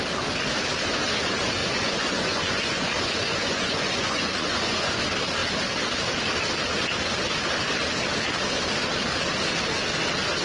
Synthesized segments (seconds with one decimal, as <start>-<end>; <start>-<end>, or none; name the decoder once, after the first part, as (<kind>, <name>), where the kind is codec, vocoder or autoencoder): 1.6-5.0 (vocoder, Vocos)